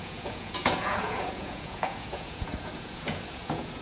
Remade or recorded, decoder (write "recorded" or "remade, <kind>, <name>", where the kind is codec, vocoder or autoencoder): remade, vocoder, Vocos